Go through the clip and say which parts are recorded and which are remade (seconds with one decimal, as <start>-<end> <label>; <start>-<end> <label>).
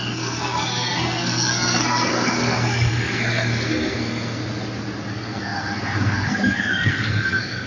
0.0-4.4 remade; 4.4-5.1 recorded; 5.1-7.7 remade